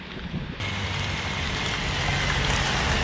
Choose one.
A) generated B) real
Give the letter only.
B